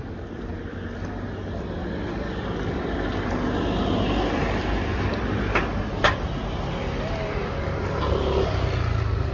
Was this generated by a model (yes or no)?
no